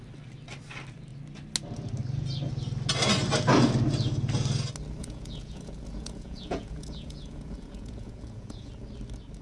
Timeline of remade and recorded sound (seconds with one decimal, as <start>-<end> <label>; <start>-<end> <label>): 0.0-5.0 recorded; 5.0-8.7 remade; 8.7-9.4 recorded